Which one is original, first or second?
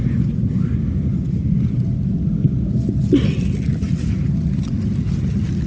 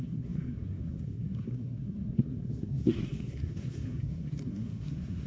first